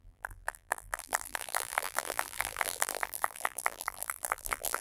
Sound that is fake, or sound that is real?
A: fake